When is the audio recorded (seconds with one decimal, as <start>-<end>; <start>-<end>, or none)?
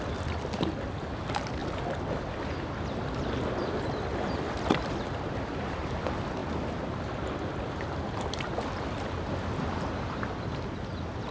1.6-4.2